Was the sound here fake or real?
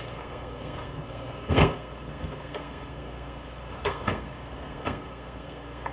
fake